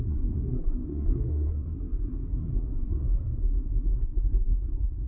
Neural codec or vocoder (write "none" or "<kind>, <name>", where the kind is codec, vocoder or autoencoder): codec, SNAC